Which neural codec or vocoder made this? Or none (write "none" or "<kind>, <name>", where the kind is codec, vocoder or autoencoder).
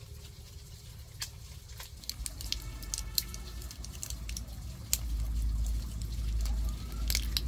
none